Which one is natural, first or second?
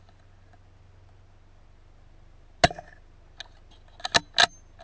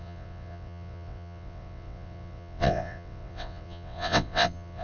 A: first